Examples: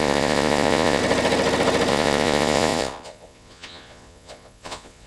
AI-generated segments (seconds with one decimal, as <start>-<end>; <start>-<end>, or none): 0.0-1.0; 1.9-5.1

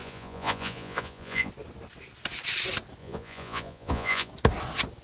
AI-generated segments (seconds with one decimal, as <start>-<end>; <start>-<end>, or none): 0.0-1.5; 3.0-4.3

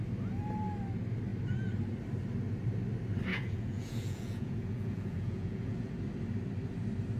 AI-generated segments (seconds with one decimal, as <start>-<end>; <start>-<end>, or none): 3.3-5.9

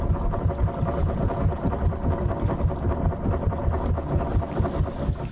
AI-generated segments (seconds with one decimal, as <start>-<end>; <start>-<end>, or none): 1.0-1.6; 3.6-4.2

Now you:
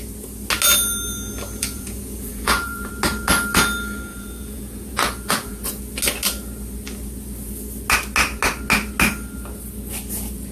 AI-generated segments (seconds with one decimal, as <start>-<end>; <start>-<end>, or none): 1.6-2.9; 4.1-5.8